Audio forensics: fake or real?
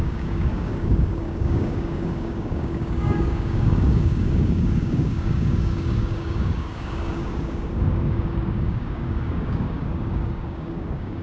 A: fake